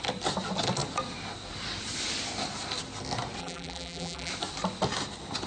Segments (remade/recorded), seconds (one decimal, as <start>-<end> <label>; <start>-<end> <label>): 0.0-3.4 recorded; 3.4-4.3 remade; 4.3-5.5 recorded